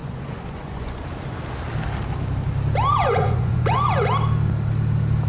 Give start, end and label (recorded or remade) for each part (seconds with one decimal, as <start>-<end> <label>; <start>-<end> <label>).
0.0-1.0 remade; 1.0-2.9 recorded; 2.9-4.1 remade; 4.1-5.3 recorded